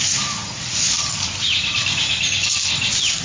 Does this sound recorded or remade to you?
recorded